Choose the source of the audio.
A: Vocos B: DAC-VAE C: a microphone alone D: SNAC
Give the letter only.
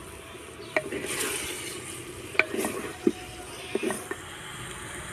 C